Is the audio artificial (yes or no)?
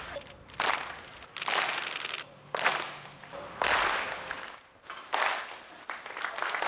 no